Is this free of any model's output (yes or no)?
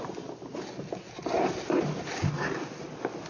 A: yes